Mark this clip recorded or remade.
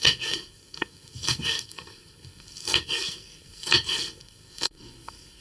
remade